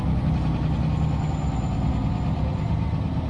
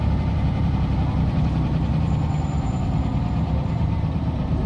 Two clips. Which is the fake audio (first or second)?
second